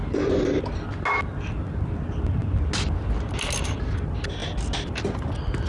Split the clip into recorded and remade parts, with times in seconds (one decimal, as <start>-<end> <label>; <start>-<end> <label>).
0.0-5.7 recorded